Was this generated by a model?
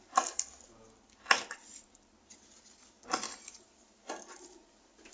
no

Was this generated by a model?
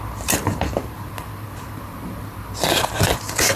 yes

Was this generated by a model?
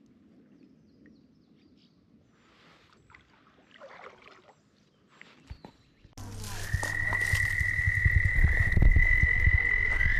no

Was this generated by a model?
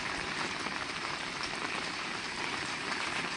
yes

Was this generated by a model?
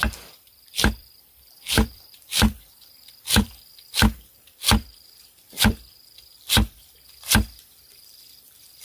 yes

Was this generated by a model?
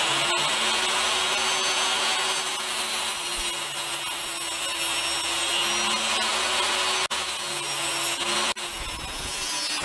no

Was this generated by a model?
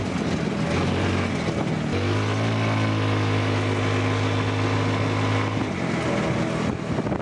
no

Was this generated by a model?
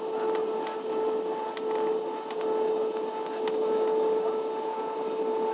no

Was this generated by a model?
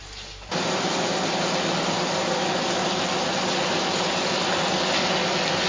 no